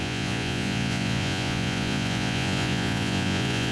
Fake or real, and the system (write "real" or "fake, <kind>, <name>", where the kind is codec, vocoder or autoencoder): fake, vocoder, Vocos